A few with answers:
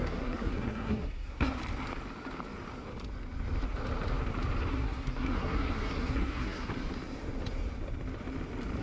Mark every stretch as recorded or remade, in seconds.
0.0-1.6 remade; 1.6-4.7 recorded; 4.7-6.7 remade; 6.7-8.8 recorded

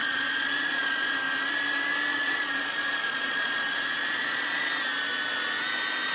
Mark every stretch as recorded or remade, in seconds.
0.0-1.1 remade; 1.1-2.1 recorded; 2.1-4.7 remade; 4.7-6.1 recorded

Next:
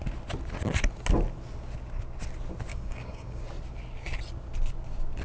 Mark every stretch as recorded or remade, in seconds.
0.0-2.7 recorded; 2.7-3.4 remade; 3.4-5.2 recorded

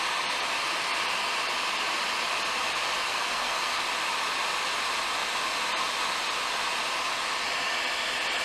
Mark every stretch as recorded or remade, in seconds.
0.0-3.1 recorded; 3.1-3.8 remade; 3.8-8.4 recorded

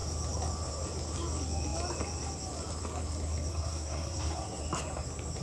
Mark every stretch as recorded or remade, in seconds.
0.0-3.5 recorded; 3.5-4.6 remade; 4.6-5.4 recorded

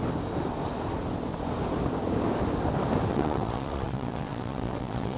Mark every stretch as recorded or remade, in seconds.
0.0-3.1 recorded; 3.1-5.2 remade